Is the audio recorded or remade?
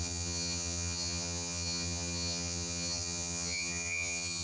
remade